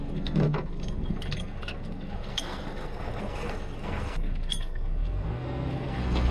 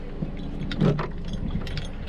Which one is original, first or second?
second